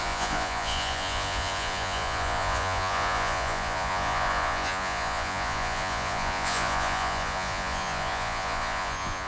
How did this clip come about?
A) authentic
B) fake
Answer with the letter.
B